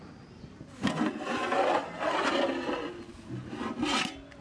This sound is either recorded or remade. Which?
recorded